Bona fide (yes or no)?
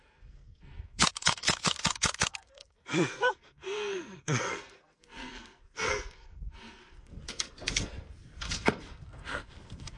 no